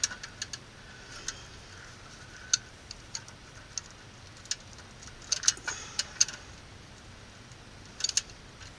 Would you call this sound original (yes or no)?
yes